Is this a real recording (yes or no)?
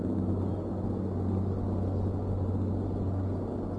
yes